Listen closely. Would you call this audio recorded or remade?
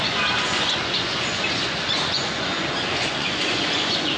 remade